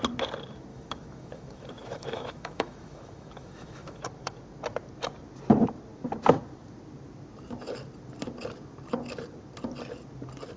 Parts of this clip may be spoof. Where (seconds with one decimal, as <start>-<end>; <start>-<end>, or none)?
0.7-4.0